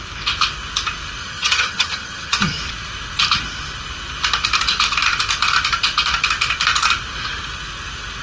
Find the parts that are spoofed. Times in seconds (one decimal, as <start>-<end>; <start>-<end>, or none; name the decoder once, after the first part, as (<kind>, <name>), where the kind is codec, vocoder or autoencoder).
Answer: 1.2-2.6 (vocoder, HiFi-GAN)